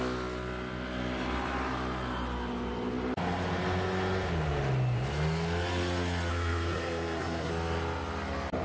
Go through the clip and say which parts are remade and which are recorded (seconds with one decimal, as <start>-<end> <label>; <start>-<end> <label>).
0.0-6.3 recorded; 6.3-7.5 remade; 7.5-8.6 recorded